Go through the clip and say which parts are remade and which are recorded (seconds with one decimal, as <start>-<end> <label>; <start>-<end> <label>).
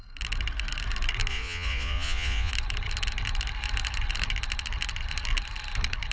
0.0-1.3 recorded; 1.3-2.5 remade; 2.5-6.1 recorded